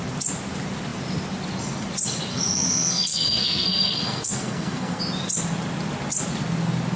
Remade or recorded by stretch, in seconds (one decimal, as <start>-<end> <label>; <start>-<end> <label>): 0.0-2.3 recorded; 2.3-5.0 remade; 5.0-7.0 recorded